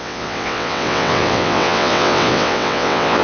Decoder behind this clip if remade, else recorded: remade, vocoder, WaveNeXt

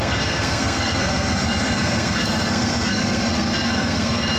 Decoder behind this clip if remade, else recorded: remade, codec, SNAC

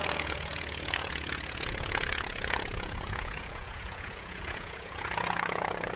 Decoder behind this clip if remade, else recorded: remade, vocoder, Vocos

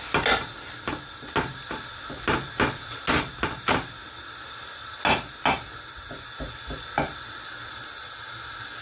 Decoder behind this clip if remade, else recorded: recorded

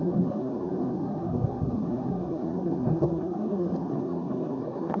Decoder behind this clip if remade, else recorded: remade, codec, SNAC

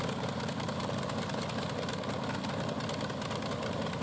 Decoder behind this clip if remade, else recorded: recorded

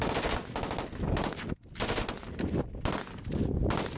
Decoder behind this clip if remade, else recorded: recorded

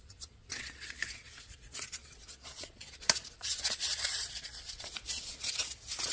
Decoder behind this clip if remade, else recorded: remade, vocoder, Vocos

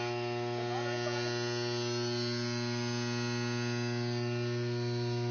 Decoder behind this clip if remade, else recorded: recorded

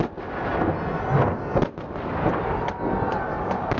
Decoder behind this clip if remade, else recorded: recorded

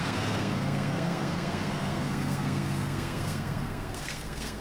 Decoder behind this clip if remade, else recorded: remade, codec, SNAC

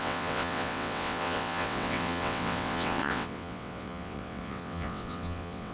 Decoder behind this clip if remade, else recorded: remade, vocoder, WaveNeXt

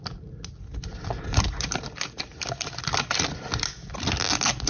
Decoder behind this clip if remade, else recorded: recorded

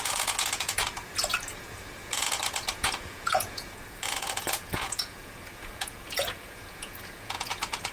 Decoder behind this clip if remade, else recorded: remade, vocoder, Vocos